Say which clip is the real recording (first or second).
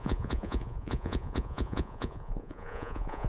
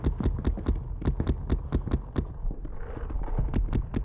second